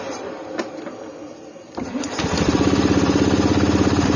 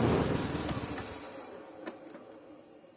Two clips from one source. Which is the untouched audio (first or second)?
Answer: second